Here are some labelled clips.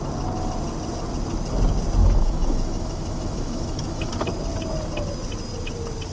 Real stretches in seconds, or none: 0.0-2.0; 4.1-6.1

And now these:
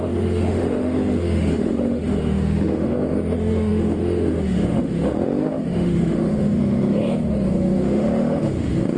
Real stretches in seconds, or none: none

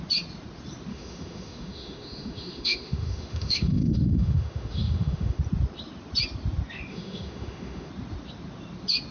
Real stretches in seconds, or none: 0.0-0.9; 5.4-6.9; 7.9-9.1